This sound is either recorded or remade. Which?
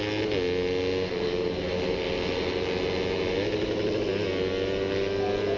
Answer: recorded